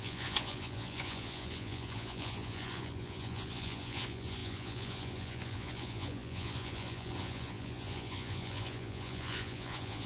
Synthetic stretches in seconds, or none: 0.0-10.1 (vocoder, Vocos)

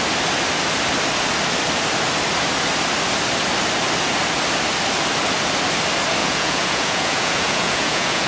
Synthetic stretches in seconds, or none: 6.2-8.3 (vocoder, Vocos)

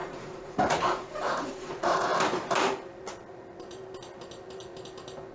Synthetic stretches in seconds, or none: 0.0-2.1 (vocoder, Vocos)

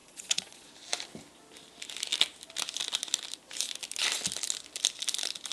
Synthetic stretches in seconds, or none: 0.0-0.7 (vocoder, Vocos)